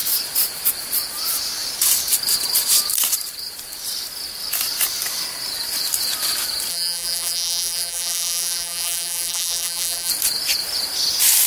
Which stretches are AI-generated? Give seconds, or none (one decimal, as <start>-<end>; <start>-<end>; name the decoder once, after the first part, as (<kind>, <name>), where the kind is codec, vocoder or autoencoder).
6.7-10.1 (vocoder, BigVGAN v2)